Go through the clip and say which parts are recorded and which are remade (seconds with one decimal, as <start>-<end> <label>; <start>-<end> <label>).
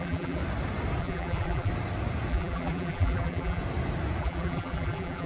0.0-0.4 remade; 0.4-1.0 recorded; 1.0-1.7 remade; 1.7-2.3 recorded; 2.3-3.6 remade; 3.6-4.2 recorded; 4.2-5.3 remade